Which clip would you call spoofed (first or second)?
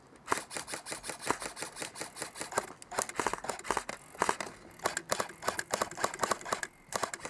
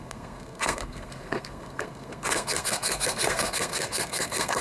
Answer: second